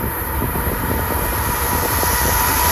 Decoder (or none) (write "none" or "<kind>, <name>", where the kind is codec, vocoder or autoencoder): vocoder, BigVGAN v2